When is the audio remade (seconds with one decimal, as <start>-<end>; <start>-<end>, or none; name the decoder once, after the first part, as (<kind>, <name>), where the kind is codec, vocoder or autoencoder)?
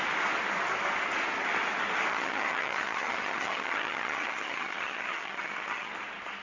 2.1-5.9 (vocoder, HiFi-GAN)